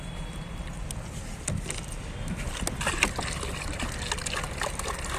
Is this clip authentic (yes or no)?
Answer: yes